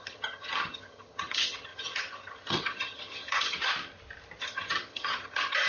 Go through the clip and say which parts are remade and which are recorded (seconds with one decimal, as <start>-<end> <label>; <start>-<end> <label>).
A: 0.0-3.7 remade; 3.7-4.4 recorded; 4.4-5.7 remade